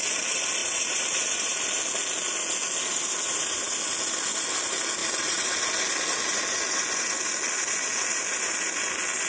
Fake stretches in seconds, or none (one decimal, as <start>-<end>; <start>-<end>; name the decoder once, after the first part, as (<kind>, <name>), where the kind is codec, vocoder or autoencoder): 0.6-1.6 (vocoder, BigVGAN v2); 5.0-5.5